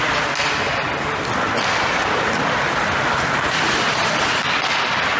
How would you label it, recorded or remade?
recorded